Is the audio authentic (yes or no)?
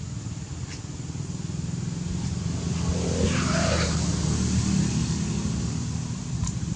yes